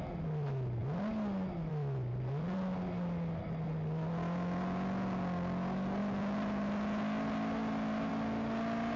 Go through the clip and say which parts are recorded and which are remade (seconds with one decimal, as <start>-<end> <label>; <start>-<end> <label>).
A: 0.0-9.0 recorded